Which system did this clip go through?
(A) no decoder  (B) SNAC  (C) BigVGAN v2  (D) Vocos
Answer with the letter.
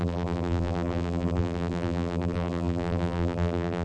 C